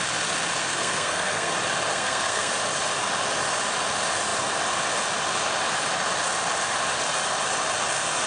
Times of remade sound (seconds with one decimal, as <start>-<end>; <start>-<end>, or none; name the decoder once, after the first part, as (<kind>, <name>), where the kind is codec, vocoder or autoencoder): 0.6-1.5 (codec, SNAC); 1.9-2.5